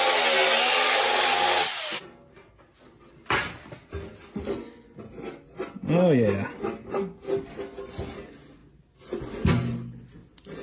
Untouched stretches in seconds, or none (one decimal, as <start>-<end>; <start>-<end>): 0.0-10.6